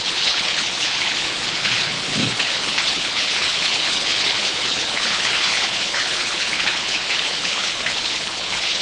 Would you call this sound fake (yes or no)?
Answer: yes